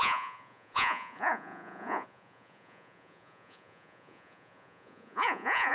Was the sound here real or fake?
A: fake